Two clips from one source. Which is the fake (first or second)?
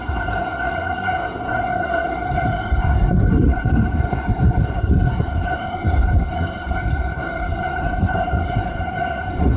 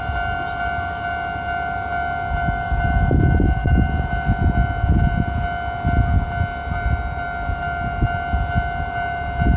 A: first